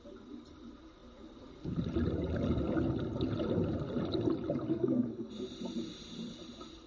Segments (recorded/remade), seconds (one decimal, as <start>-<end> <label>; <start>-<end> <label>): 0.0-4.7 recorded; 4.7-5.3 remade; 5.3-6.9 recorded